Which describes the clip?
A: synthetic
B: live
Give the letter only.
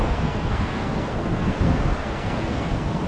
A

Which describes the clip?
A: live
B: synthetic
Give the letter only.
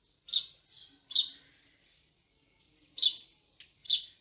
A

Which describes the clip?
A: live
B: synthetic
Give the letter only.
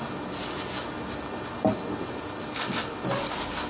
A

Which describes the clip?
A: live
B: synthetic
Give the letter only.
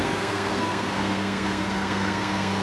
B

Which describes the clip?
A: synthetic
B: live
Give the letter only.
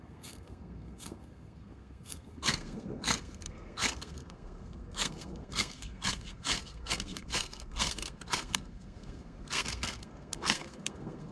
A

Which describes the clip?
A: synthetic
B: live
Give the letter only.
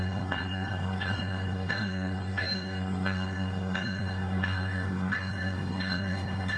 A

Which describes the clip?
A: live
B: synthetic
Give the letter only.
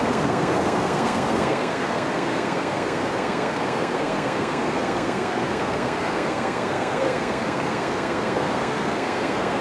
B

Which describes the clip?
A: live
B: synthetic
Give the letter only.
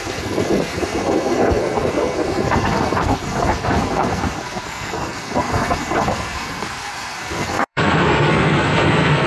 B